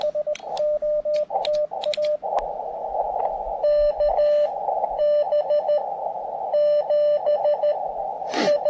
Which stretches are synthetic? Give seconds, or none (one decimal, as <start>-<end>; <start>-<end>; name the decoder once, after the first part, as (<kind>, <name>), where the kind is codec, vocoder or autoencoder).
8.1-8.7 (vocoder, BigVGAN v2)